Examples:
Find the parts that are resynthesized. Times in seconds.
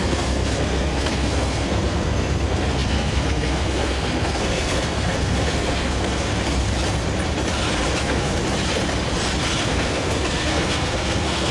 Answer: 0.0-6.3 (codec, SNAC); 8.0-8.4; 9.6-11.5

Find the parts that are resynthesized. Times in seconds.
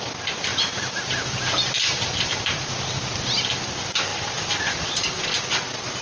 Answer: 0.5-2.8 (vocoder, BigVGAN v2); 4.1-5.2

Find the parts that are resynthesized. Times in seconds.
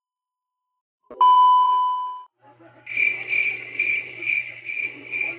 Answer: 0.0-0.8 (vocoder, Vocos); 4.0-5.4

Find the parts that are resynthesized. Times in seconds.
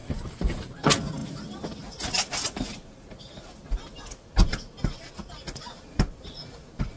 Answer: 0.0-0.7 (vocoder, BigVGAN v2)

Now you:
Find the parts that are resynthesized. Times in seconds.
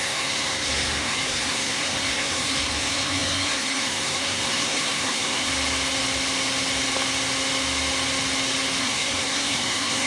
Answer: 0.0-5.5 (codec, SNAC); 8.8-10.1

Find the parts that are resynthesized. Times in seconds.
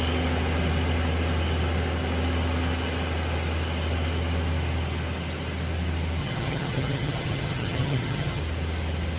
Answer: 6.2-8.4 (vocoder, HiFi-GAN)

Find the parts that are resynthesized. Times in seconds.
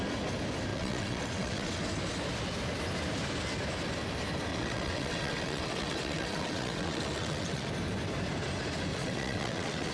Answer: 0.7-1.8 (vocoder, WaveNeXt); 4.5-7.7; 8.9-9.9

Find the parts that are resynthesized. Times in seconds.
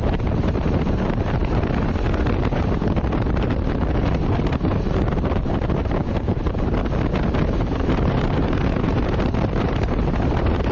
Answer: 0.0-6.8 (vocoder, BigVGAN v2); 7.4-10.7